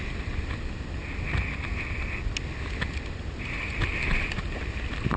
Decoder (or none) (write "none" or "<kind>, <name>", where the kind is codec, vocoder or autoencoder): none